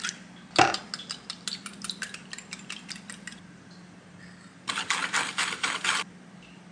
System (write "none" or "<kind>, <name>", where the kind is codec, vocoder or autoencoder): none